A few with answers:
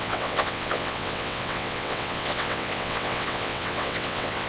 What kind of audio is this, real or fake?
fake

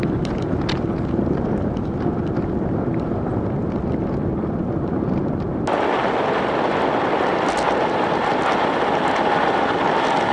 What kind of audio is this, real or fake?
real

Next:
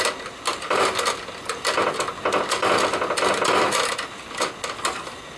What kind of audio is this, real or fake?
real